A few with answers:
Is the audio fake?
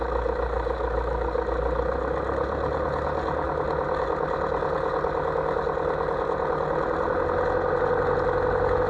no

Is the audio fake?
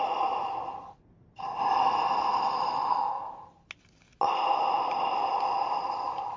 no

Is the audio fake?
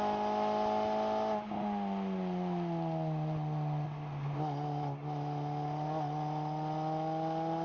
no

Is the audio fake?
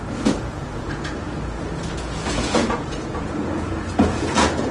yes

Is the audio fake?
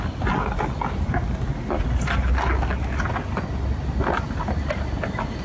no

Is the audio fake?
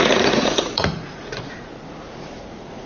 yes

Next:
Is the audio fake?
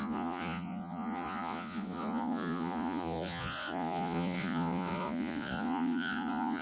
yes